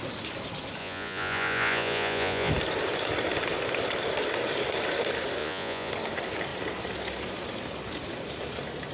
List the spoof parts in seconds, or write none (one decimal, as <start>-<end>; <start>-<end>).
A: 0.8-2.5; 5.4-5.9